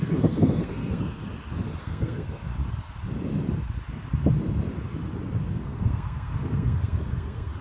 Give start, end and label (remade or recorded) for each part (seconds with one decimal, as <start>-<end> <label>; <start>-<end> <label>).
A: 0.0-1.2 remade; 1.2-1.8 recorded; 1.8-2.5 remade; 2.5-5.4 recorded; 5.4-7.6 remade